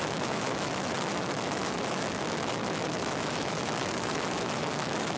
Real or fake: fake